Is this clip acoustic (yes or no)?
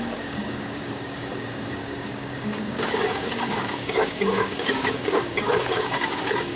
no